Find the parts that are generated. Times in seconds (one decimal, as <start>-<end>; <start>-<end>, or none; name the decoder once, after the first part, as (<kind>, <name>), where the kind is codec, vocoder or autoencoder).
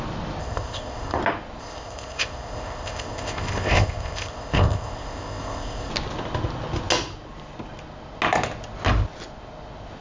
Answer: 0.4-1.2 (codec, ZipCodec); 1.6-5.9